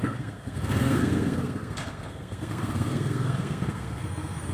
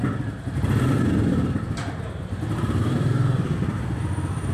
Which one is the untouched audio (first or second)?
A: second